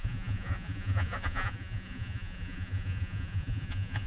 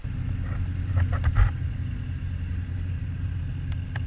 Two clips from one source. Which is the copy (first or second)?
first